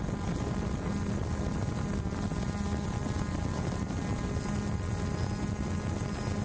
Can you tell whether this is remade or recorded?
recorded